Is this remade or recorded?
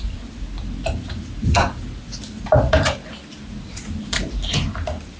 remade